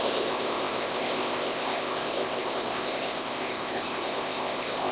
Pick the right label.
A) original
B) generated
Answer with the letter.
B